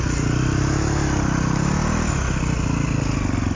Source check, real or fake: real